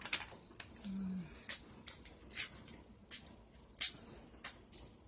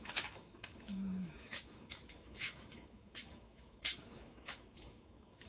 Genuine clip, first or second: first